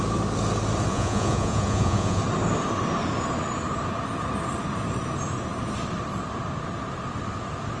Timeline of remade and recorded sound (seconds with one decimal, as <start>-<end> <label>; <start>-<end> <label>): 0.0-0.9 recorded; 0.9-2.2 remade; 2.2-7.8 recorded